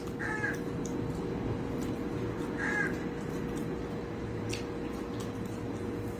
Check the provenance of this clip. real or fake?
real